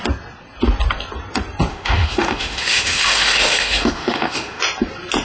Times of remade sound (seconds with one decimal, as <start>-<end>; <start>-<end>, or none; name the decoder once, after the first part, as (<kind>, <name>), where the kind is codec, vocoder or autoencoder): 1.7-4.6 (autoencoder, DAC-VAE)